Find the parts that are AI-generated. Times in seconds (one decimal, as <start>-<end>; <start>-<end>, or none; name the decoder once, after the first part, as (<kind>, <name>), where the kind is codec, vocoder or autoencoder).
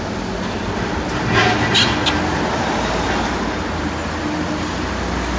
none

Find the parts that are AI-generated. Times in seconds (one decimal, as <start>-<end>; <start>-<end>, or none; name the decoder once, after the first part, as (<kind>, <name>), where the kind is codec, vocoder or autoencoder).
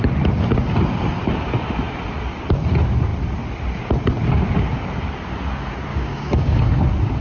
5.9-6.6 (codec, DAC)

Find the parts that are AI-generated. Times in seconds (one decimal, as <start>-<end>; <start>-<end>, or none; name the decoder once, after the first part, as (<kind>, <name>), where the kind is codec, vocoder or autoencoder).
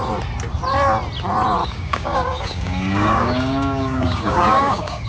1.6-5.1 (codec, DAC)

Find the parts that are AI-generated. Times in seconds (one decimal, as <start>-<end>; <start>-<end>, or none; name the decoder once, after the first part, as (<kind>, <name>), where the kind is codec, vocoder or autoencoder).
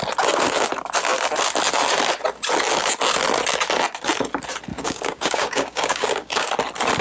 4.7-6.5 (codec, DAC)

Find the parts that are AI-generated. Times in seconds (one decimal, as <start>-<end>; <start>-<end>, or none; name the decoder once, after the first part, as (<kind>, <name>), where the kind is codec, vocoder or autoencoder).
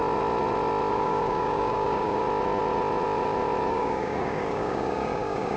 0.9-2.2 (codec, DAC); 3.7-5.6